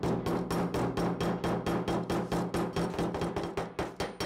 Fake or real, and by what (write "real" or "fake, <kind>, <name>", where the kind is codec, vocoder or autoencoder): real